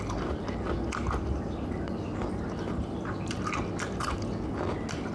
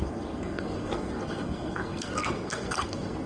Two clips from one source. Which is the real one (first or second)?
first